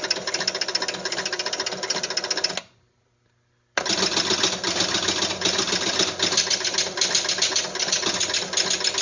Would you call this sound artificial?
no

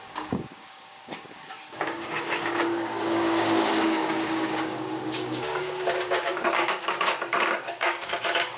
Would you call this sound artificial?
yes